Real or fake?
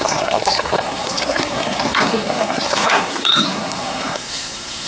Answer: fake